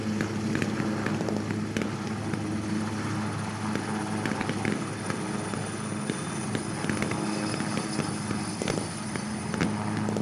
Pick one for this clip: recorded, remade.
recorded